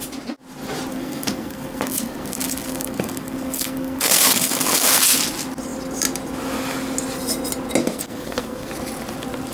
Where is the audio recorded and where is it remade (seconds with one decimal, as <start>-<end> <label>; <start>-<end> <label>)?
0.0-0.9 recorded; 0.9-5.2 remade; 5.2-7.8 recorded; 7.8-8.7 remade; 8.7-9.5 recorded